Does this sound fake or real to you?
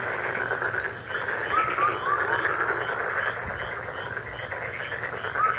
real